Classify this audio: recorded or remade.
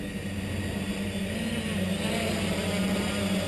recorded